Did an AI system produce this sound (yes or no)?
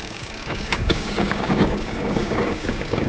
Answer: yes